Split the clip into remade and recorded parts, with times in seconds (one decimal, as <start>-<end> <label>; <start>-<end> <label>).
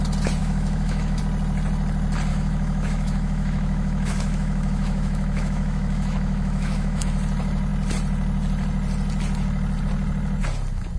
0.0-0.4 recorded; 0.4-1.2 remade; 1.2-2.3 recorded; 2.3-7.0 remade; 7.0-11.0 recorded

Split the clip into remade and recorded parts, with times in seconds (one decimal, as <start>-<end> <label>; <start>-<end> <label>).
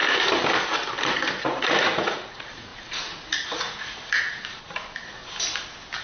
0.0-1.4 recorded; 1.4-5.2 remade; 5.2-6.0 recorded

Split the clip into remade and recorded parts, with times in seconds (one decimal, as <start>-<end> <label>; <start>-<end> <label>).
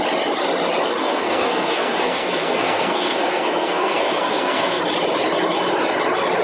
0.0-1.0 recorded; 1.0-4.8 remade; 4.8-6.4 recorded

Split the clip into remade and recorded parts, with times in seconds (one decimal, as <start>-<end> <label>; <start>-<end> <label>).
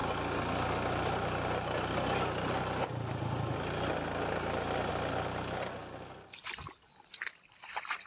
0.0-8.1 recorded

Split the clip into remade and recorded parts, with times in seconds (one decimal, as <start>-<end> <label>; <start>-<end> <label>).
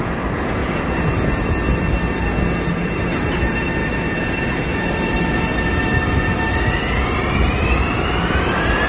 0.0-7.2 recorded; 7.2-8.9 remade